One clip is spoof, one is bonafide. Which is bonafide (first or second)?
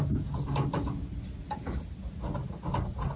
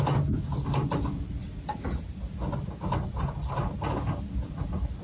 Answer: first